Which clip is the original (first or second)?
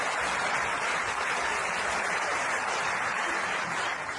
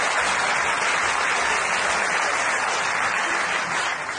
second